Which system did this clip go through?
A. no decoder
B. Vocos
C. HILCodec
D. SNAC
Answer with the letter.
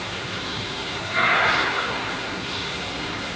D